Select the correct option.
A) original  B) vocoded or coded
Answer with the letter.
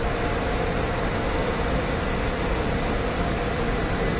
B